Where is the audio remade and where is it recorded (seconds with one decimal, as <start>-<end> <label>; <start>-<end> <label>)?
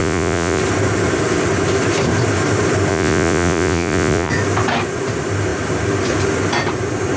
0.0-0.6 remade; 0.6-2.9 recorded; 2.9-4.3 remade; 4.3-7.2 recorded